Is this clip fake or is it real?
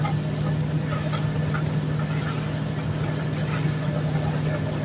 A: real